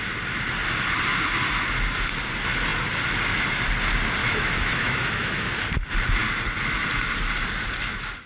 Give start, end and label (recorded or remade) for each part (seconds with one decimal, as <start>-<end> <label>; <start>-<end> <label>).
0.0-4.2 recorded; 4.2-5.5 remade; 5.5-8.3 recorded